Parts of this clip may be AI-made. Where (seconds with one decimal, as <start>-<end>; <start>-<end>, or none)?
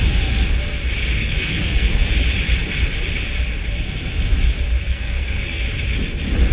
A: 1.2-2.1; 4.8-5.6